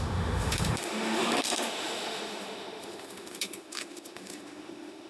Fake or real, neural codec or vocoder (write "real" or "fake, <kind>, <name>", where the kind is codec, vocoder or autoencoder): fake, autoencoder, DAC-VAE